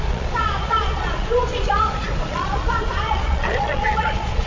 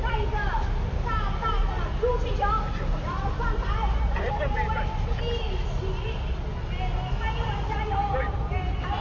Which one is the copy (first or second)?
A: first